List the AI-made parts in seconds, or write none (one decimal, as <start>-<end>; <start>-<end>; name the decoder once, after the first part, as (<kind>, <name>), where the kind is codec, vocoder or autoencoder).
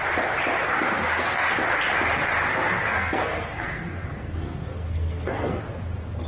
0.7-1.5 (codec, SNAC); 2.5-5.6